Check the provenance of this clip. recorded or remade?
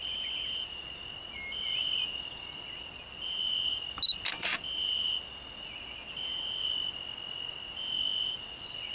recorded